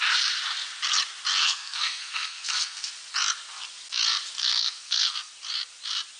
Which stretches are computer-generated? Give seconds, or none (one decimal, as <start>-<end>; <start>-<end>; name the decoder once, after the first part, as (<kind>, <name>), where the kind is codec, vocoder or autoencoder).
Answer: 1.4-2.9 (codec, SNAC); 4.4-5.3